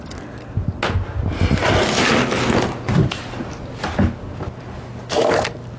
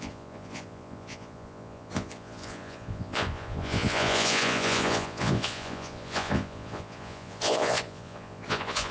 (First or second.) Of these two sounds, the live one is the first